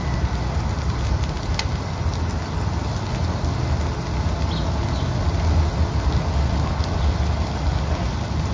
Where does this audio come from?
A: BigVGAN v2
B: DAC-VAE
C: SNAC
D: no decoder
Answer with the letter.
D